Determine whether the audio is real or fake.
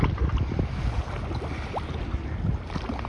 real